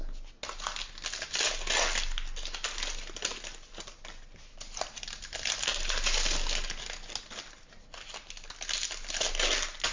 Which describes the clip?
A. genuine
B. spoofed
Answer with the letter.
A